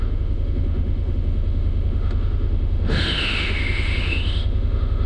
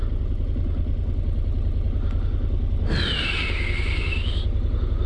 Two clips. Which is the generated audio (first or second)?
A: first